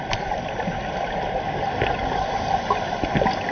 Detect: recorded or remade recorded